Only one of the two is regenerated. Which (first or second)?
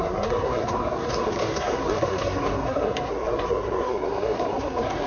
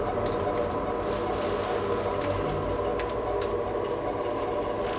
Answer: first